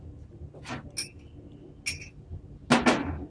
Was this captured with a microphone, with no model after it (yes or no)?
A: yes